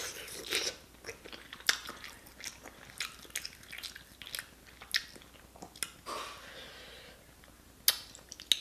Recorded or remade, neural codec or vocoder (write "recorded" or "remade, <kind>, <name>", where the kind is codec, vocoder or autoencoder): recorded